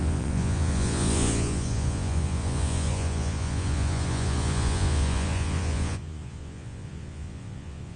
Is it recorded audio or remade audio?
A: remade